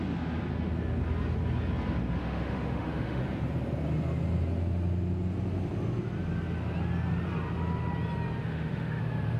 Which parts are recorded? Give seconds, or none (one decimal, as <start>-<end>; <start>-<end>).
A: 0.0-2.2; 3.2-8.4; 9.0-9.4